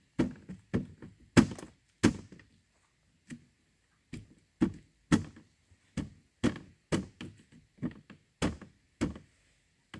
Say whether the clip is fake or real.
real